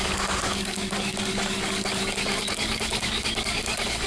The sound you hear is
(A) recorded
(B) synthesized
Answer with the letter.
B